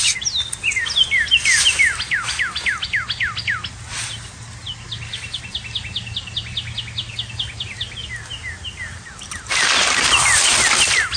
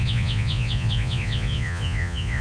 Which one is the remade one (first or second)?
second